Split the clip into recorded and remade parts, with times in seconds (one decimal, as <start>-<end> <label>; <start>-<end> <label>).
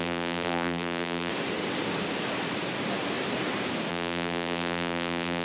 0.0-1.3 remade; 1.3-3.9 recorded; 3.9-5.4 remade